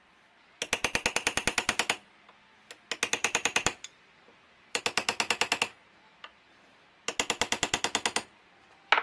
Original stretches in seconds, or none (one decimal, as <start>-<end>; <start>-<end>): 0.0-3.2; 4.8-9.0

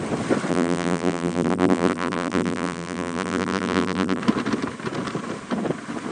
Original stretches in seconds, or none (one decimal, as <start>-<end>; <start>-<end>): 0.0-0.5; 4.2-6.1

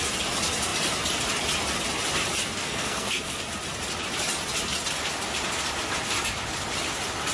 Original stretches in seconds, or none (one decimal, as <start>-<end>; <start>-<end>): 0.0-2.6; 3.4-7.3